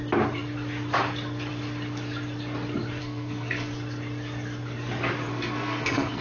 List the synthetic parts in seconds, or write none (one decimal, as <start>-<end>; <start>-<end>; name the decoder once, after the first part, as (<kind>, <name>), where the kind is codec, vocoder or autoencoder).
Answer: 3.0-3.7 (codec, SNAC); 5.3-6.2